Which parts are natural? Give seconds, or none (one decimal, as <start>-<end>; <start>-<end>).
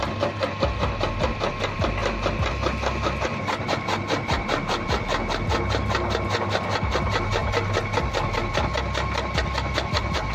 0.0-10.3